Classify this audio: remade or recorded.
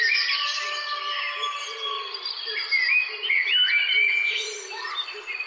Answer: recorded